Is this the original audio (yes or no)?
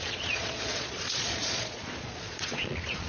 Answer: no